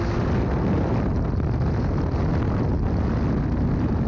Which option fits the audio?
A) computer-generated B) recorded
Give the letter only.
B